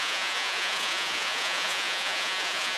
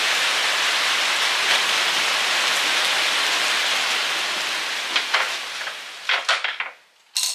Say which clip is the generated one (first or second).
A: first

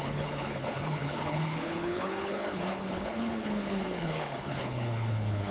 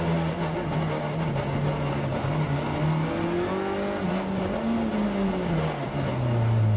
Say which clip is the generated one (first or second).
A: first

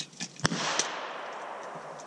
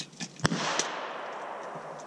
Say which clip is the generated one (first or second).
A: first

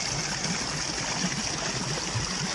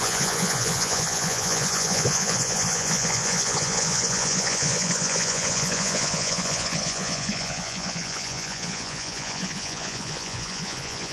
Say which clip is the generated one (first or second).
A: second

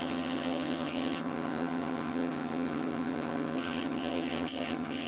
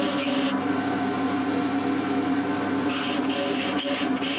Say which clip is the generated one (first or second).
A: first